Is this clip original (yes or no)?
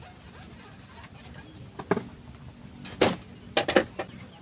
yes